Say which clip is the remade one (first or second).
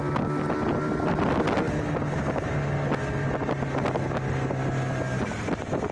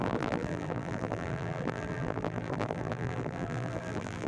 second